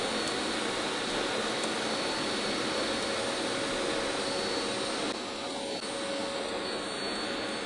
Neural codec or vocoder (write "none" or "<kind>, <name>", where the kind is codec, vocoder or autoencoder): none